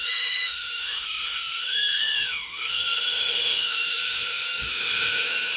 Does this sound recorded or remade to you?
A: remade